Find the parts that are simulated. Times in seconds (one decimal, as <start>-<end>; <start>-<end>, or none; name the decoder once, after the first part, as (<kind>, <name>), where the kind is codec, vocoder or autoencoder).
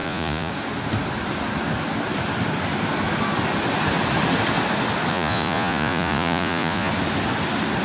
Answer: 0.0-0.5 (vocoder, Vocos); 5.1-6.9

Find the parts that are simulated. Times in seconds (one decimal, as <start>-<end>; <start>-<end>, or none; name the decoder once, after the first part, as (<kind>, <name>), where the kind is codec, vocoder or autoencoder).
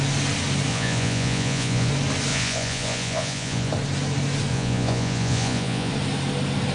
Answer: 0.7-1.9 (vocoder, Vocos); 2.3-3.7; 4.5-5.9